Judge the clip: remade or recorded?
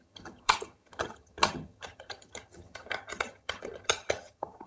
remade